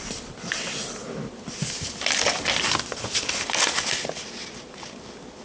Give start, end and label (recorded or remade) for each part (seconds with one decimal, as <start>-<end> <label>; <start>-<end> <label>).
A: 0.0-5.4 recorded